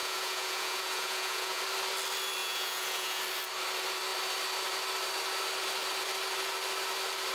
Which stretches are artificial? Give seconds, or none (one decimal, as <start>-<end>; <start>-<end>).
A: 0.0-1.6; 2.4-3.2